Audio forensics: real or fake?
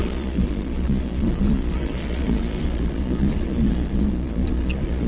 fake